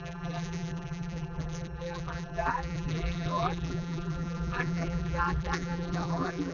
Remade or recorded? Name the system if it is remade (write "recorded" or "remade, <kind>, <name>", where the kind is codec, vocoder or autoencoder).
remade, vocoder, BigVGAN v2